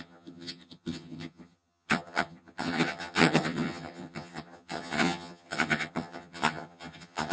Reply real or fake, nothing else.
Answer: fake